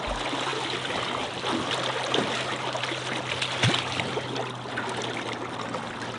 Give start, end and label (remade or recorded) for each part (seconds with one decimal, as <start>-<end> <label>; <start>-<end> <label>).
0.0-6.2 recorded